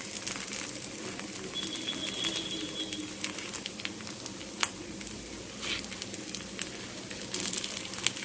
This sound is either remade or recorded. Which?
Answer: recorded